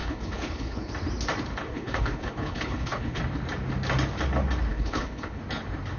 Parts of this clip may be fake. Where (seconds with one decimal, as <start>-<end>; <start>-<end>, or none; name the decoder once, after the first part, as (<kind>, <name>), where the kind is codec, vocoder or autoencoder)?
0.0-0.9 (codec, HILCodec); 1.7-3.2; 4.7-5.4